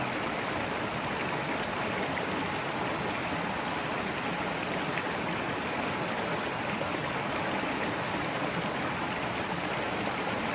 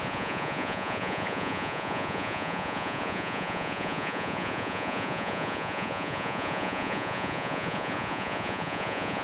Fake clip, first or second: second